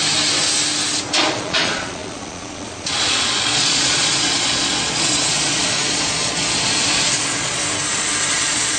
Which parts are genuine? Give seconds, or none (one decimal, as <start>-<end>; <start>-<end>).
0.0-1.2; 7.6-8.3